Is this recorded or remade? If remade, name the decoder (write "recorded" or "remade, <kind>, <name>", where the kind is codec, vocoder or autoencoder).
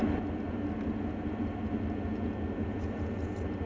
recorded